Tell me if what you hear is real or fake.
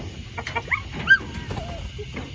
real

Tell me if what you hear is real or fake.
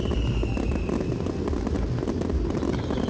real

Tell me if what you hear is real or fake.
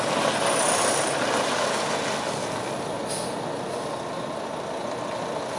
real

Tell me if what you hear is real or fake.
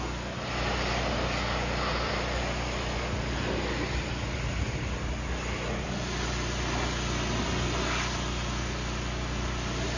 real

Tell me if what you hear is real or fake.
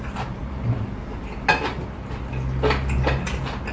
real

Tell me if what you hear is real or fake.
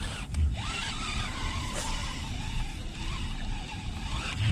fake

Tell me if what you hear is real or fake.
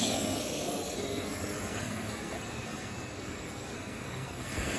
fake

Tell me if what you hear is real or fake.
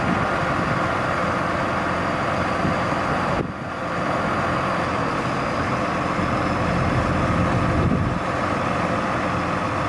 real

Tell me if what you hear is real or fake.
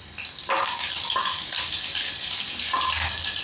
real